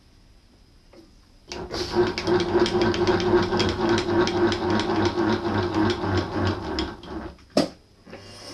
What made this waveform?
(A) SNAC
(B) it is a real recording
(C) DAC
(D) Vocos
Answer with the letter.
B